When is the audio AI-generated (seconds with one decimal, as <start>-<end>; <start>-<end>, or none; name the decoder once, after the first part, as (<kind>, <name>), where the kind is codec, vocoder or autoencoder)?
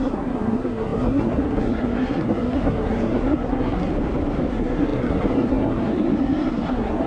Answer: 0.0-3.9 (codec, SNAC); 4.5-7.1